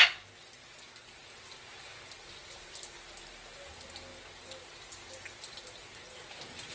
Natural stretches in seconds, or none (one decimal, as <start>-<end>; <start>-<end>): 0.0-6.7